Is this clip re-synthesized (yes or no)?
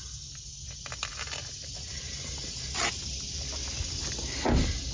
no